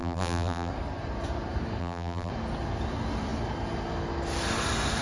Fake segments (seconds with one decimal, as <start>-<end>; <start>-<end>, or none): 0.0-0.7; 1.8-2.3